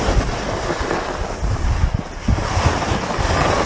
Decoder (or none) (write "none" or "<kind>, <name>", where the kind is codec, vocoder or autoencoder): none